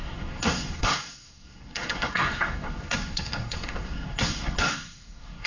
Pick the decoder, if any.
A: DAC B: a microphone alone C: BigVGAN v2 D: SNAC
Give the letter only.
D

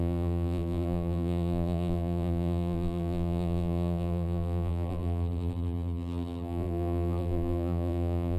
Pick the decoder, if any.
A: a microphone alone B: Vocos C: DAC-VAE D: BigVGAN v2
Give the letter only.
D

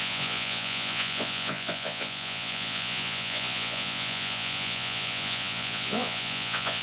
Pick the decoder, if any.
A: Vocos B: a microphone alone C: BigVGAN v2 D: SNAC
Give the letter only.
A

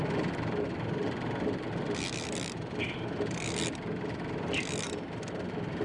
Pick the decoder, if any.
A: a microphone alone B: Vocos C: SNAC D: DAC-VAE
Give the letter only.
A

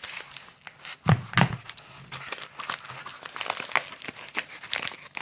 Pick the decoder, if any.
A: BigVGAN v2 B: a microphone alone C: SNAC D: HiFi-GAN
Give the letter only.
B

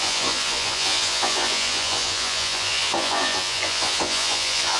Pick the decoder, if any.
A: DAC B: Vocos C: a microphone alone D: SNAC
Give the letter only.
B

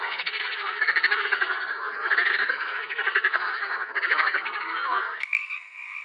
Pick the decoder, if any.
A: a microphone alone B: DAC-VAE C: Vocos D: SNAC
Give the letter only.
D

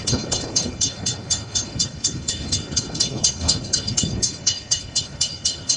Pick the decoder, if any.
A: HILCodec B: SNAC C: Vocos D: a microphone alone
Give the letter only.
A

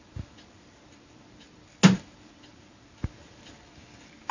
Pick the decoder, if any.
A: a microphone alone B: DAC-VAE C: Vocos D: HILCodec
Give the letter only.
A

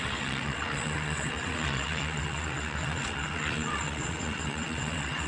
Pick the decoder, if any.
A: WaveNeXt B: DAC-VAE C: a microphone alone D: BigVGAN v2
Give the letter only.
A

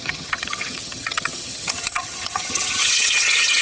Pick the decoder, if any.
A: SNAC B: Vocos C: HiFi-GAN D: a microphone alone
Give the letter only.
C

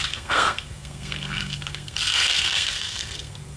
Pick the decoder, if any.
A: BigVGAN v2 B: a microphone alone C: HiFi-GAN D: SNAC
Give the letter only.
D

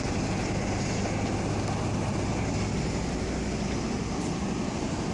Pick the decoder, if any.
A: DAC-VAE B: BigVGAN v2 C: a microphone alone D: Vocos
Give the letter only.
C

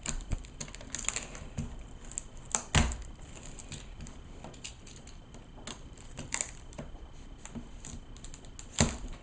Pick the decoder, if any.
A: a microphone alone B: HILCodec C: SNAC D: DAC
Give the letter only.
A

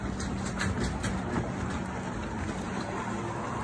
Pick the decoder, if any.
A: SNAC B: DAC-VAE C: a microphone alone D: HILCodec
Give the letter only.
C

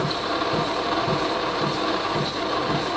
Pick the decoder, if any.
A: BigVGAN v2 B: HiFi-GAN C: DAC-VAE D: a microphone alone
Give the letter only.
A